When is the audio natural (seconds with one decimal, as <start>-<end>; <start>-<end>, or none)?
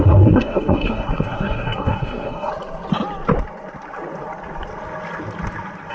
2.5-5.9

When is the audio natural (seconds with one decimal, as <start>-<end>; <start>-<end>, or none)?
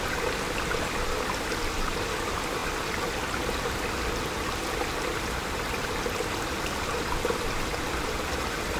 0.0-8.8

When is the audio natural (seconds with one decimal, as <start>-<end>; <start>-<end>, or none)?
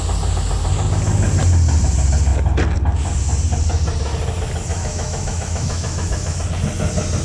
0.0-4.7; 6.4-7.2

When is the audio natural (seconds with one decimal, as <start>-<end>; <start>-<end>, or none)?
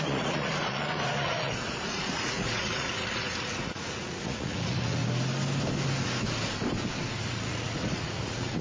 5.0-7.2